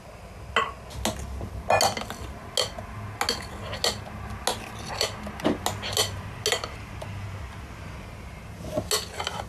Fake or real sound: real